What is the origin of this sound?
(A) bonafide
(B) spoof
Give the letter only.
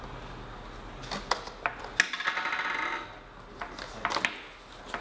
A